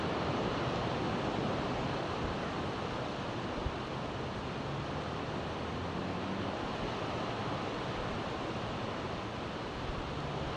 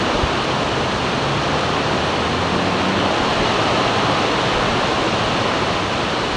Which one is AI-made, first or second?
first